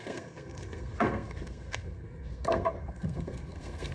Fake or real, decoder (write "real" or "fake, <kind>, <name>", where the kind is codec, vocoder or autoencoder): fake, codec, SNAC